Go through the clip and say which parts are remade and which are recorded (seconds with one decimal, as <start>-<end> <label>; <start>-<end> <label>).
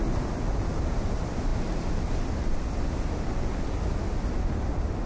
0.0-5.1 recorded